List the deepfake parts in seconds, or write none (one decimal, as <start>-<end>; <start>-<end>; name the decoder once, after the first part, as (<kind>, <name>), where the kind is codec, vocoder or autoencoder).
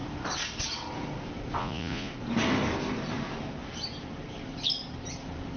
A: 1.6-2.1 (vocoder, Vocos)